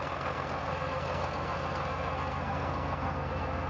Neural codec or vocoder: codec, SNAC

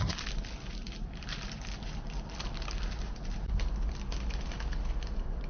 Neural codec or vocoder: none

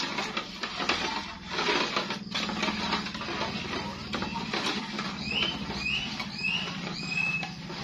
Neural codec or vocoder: none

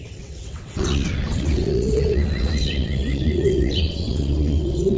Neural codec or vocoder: vocoder, WaveNeXt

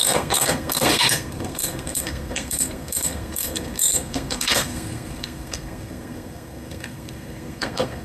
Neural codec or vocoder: codec, SNAC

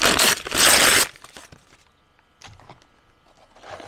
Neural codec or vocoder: none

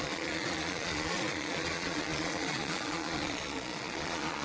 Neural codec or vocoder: vocoder, Vocos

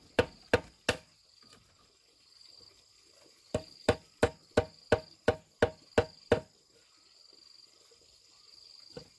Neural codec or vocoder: none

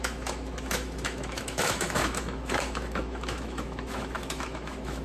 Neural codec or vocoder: autoencoder, DAC-VAE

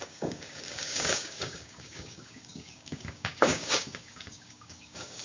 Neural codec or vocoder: codec, DAC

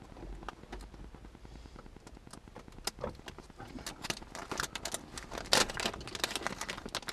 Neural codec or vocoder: none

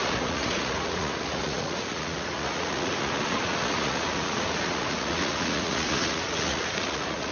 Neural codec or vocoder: vocoder, Vocos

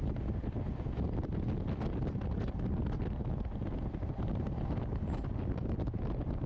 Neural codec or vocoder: none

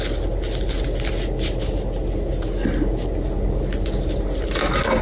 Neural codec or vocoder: none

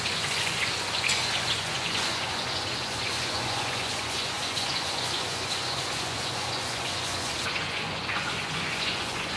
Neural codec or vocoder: vocoder, Vocos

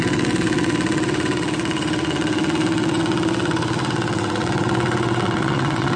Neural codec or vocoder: vocoder, WaveNeXt